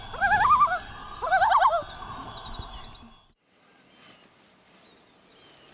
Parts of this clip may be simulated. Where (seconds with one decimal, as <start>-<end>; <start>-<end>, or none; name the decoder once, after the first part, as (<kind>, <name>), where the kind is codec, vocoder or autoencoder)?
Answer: none